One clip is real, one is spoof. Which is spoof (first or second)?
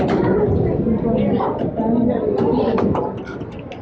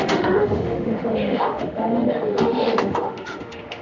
second